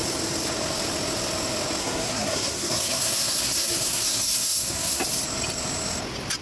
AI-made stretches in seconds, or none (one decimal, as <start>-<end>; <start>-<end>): 1.8-5.0